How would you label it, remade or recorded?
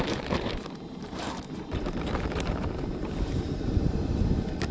remade